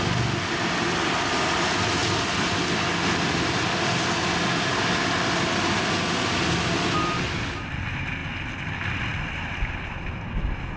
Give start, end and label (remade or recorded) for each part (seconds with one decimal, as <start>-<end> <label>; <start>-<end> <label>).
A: 0.0-10.8 recorded